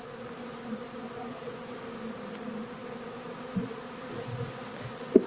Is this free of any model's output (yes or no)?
yes